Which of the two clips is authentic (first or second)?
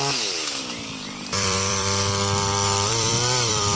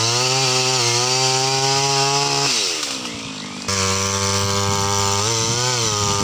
second